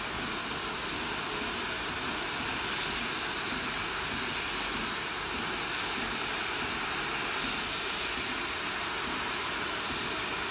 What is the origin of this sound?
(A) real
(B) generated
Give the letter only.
A